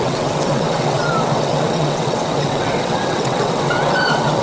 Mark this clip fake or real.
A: fake